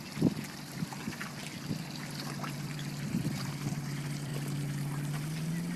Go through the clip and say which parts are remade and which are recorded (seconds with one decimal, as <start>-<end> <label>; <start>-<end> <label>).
0.0-4.3 remade; 4.3-5.2 recorded; 5.2-5.8 remade